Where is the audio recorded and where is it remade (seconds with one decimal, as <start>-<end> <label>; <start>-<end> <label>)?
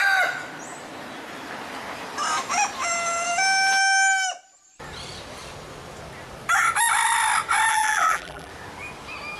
0.0-7.7 recorded; 7.7-8.5 remade; 8.5-9.4 recorded